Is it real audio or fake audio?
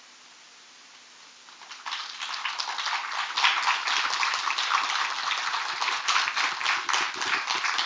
real